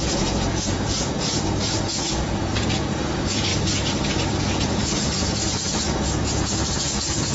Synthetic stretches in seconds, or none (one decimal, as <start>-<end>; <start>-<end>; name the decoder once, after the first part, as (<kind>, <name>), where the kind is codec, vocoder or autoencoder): 0.0-3.5 (vocoder, Vocos); 4.1-7.3